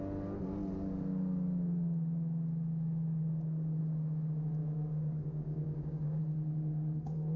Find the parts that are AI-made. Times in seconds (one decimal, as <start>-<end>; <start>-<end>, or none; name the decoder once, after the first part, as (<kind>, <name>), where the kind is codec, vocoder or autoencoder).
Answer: 3.2-3.8 (codec, DAC); 4.6-6.2